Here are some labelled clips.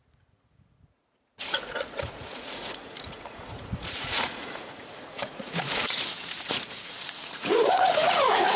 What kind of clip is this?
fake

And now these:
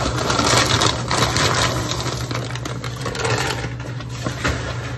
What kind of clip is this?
real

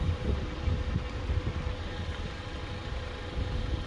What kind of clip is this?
real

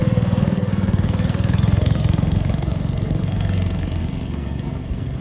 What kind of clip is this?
fake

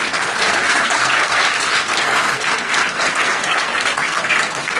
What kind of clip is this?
fake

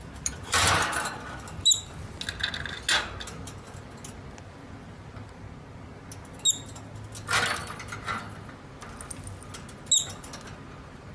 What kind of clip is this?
real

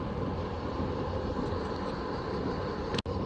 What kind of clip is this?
real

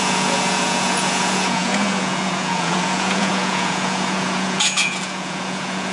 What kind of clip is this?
fake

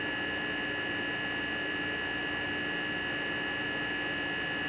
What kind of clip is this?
real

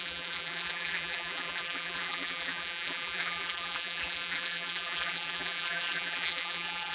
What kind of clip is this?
fake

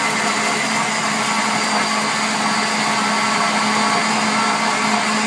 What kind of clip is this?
real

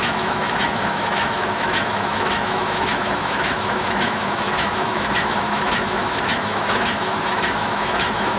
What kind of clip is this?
fake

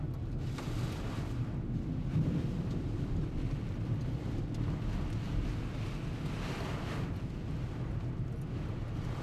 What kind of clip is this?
real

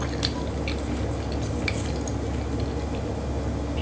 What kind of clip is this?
real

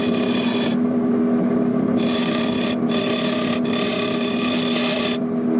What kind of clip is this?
real